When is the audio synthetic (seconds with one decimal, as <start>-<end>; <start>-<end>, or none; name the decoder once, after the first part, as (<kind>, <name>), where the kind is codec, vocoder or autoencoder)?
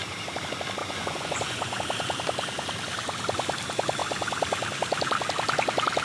0.8-1.8 (vocoder, Vocos)